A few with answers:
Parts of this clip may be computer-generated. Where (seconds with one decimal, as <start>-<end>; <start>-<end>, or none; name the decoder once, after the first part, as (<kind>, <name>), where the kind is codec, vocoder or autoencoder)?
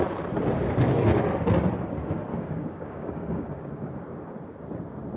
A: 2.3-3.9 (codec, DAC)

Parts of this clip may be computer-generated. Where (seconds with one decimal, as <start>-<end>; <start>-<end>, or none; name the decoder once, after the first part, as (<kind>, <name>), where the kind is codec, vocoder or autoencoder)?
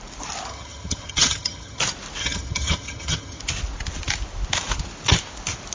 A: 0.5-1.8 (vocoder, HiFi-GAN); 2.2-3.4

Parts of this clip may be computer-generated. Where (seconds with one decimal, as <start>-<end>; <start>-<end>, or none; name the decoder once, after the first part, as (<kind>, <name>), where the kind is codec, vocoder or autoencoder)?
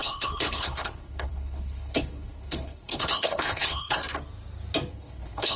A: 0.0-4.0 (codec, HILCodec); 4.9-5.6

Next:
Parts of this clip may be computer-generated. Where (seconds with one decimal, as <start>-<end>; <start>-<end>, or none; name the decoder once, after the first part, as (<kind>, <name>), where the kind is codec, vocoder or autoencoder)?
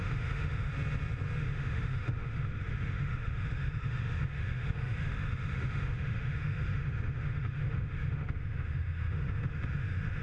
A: 0.0-0.7 (autoencoder, DAC-VAE); 1.4-10.2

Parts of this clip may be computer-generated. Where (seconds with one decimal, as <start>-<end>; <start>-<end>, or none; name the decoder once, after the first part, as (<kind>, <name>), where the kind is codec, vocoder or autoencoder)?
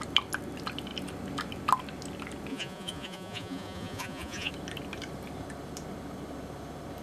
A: 2.5-4.5 (vocoder, Vocos)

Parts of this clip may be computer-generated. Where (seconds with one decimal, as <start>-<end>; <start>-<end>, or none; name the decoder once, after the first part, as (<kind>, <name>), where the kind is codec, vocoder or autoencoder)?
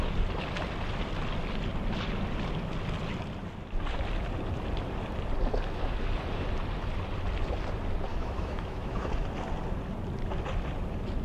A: 8.1-9.1 (autoencoder, DAC-VAE)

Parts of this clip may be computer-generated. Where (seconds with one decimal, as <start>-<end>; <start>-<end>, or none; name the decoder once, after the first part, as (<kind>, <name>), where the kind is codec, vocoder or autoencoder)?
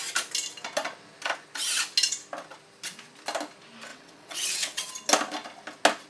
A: 3.9-4.9 (vocoder, WaveNeXt)